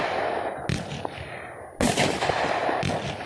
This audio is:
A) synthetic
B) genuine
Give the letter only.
B